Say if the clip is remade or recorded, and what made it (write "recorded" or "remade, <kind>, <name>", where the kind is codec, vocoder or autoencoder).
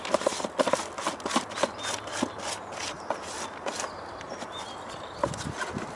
recorded